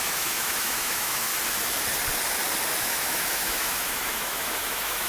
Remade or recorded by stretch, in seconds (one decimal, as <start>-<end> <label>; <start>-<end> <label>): 0.0-1.3 remade; 1.3-2.8 recorded; 2.8-5.1 remade

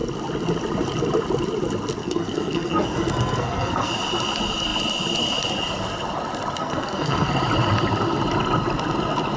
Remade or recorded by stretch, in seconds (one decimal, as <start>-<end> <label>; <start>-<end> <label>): 0.0-2.0 recorded; 2.0-3.9 remade; 3.9-6.6 recorded; 6.6-7.3 remade; 7.3-9.4 recorded

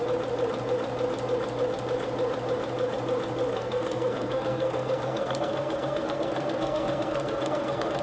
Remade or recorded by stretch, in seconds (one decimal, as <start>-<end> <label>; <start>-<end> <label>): 0.0-3.5 recorded; 3.5-8.0 remade

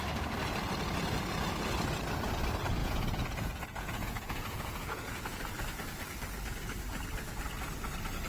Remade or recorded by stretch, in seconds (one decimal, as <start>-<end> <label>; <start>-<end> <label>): 0.0-2.8 recorded; 2.8-5.4 remade; 5.4-8.3 recorded

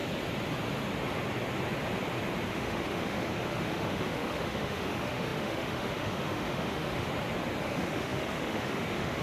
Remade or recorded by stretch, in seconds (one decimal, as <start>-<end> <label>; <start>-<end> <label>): 0.0-2.5 recorded; 2.5-7.1 remade; 7.1-7.6 recorded; 7.6-9.2 remade